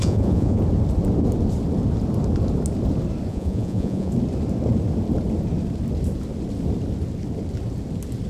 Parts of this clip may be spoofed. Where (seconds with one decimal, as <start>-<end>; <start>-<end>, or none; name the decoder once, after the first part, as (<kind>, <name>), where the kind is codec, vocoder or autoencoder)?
0.0-0.6 (vocoder, Vocos); 3.3-4.1